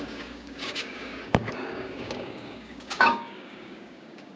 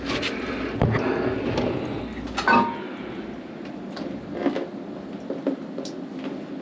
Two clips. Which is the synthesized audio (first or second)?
first